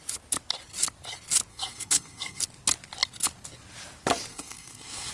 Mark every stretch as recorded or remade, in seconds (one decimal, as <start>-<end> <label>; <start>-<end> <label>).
0.0-1.5 recorded; 1.5-2.4 remade; 2.4-4.3 recorded; 4.3-5.1 remade